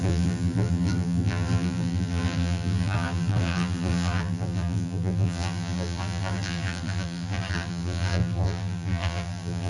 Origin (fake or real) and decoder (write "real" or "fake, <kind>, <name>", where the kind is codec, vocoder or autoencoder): fake, vocoder, BigVGAN v2